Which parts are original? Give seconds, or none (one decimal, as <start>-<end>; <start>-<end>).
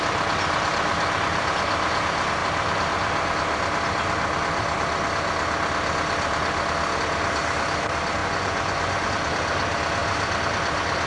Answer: 0.0-8.2; 9.1-11.1